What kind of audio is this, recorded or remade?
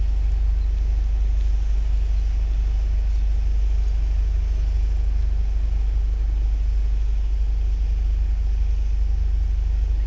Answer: recorded